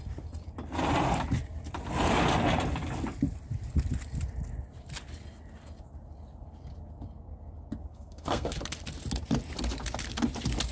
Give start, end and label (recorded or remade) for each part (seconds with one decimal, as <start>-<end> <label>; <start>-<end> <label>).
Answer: 0.0-7.8 recorded; 7.8-8.6 remade; 8.6-10.7 recorded